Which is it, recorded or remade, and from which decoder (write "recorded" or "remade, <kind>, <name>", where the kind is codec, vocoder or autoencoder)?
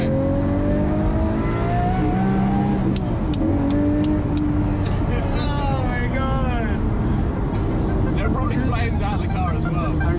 recorded